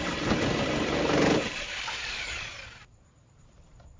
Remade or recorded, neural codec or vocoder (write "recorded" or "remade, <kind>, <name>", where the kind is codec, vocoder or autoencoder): remade, vocoder, BigVGAN v2